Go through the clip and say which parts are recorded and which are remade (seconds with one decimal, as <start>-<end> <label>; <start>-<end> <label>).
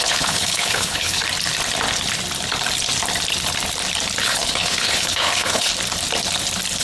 0.0-1.2 remade; 1.2-4.2 recorded; 4.2-5.7 remade; 5.7-6.8 recorded